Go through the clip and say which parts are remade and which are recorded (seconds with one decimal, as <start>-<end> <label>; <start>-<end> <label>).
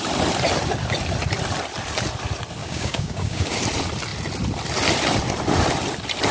0.0-2.6 recorded; 2.6-3.6 remade; 3.6-6.3 recorded